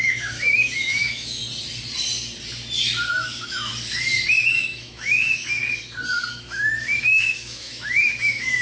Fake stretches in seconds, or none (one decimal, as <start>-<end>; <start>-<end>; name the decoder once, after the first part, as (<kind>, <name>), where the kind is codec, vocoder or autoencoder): 0.0-1.4 (autoencoder, DAC-VAE); 3.1-3.7; 4.5-5.6; 6.3-8.6